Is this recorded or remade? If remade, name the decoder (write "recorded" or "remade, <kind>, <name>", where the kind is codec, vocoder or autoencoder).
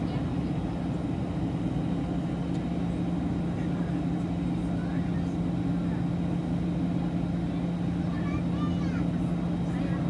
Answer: recorded